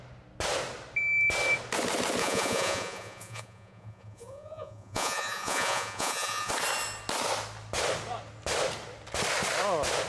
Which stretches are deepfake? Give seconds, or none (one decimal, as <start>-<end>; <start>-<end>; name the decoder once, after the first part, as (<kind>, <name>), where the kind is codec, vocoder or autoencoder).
2.2-6.5 (vocoder, Vocos)